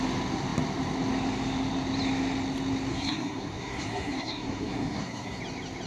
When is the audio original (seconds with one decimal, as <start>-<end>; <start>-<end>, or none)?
0.0-2.9; 5.4-5.9